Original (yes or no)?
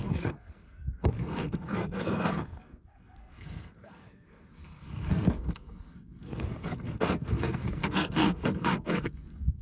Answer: no